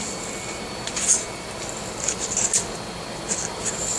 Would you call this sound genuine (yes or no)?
yes